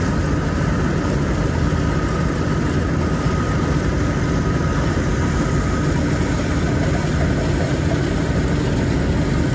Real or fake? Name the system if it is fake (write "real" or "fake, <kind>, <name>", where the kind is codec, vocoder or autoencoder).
real